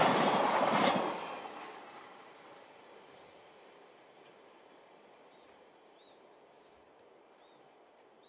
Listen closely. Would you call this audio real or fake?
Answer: real